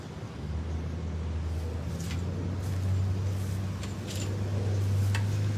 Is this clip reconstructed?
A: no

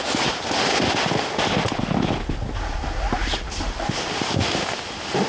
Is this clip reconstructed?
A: no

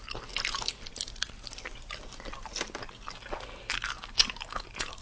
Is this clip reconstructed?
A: no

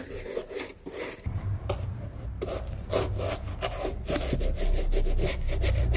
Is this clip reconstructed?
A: no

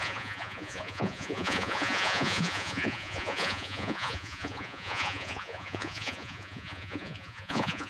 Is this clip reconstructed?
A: yes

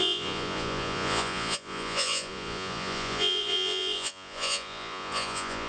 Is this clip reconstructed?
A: yes